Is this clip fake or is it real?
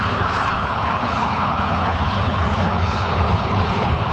fake